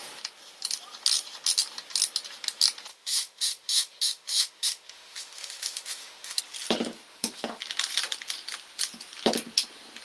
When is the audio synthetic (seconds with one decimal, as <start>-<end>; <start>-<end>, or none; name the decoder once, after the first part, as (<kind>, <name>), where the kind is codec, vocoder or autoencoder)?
2.9-6.4 (autoencoder, DAC-VAE); 7.1-7.6